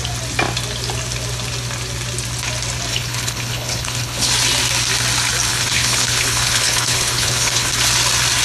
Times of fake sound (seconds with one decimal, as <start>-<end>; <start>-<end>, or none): 2.9-4.3; 5.5-7.7